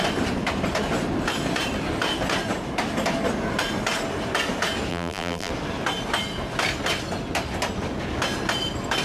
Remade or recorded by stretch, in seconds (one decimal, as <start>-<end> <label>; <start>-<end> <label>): 0.0-4.9 recorded; 4.9-5.5 remade; 5.5-9.0 recorded